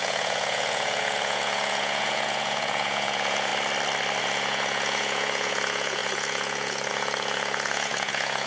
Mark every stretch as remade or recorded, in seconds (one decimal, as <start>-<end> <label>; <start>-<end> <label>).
0.0-3.5 remade; 3.5-4.2 recorded; 4.2-8.5 remade